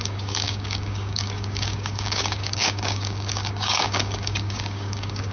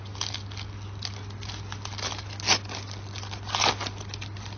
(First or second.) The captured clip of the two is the second